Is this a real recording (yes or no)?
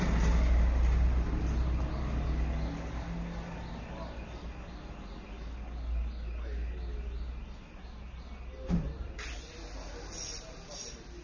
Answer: yes